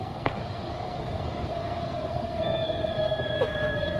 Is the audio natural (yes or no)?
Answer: no